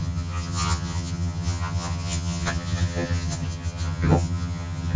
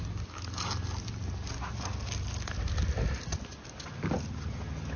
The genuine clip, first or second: second